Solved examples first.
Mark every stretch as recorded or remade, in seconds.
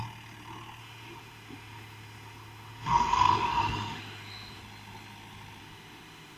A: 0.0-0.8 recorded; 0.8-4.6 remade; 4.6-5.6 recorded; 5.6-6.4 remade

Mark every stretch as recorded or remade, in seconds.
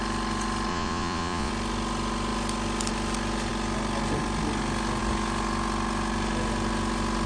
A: 0.0-0.7 recorded; 0.7-1.5 remade; 1.5-7.3 recorded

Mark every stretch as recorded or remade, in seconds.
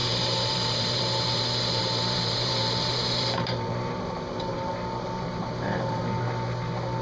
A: 0.0-1.4 remade; 1.4-1.8 recorded; 1.8-6.0 remade; 6.0-7.0 recorded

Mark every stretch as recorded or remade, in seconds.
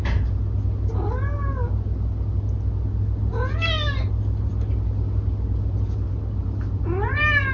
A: 0.0-7.5 recorded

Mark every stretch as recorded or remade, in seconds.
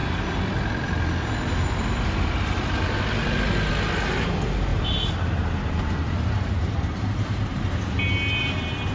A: 0.0-4.7 recorded; 4.7-7.7 remade; 7.7-8.9 recorded